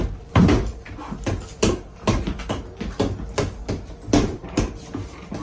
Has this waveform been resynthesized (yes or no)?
no